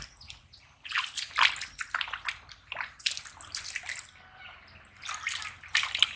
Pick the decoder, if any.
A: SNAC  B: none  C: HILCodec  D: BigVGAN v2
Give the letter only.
B